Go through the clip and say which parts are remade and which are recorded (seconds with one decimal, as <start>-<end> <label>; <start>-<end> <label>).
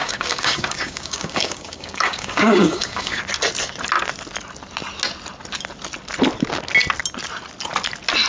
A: 0.0-3.2 remade; 3.2-8.3 recorded